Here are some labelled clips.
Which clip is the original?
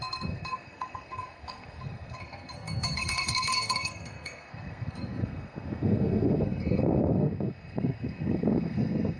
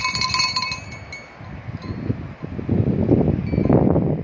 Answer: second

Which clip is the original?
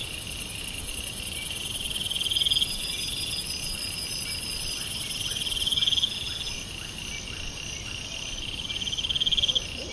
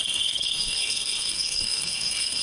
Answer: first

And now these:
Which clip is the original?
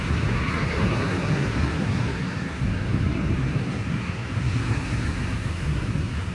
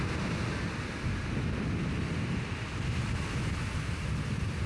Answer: second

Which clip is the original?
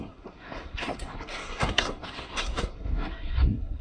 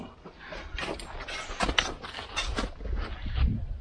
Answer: second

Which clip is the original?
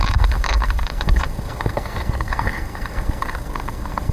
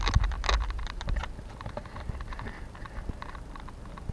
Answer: second